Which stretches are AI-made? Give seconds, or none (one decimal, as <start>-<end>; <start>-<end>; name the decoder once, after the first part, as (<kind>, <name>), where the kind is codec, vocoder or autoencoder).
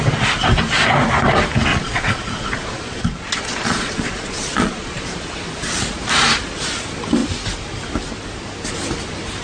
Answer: 1.7-5.0 (vocoder, Vocos)